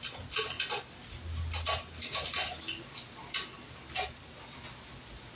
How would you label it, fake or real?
real